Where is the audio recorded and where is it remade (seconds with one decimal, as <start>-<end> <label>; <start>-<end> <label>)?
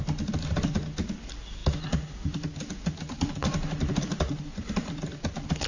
0.0-5.7 recorded